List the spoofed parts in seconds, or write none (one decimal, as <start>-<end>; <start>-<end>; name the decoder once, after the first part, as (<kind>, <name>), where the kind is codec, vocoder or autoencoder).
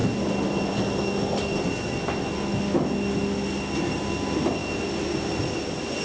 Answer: none